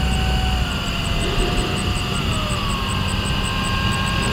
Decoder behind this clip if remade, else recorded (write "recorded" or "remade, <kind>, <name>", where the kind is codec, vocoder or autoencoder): recorded